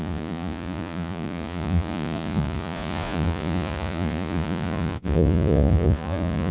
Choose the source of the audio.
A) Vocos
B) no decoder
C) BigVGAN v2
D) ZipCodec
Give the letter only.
A